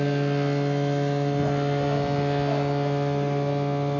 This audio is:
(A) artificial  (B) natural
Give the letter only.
B